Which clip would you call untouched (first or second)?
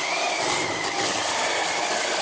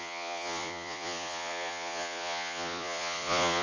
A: first